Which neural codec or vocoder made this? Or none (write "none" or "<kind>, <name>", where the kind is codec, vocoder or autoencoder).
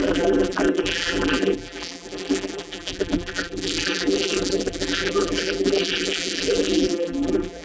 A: vocoder, BigVGAN v2